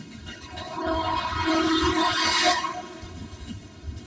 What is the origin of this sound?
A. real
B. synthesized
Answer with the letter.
B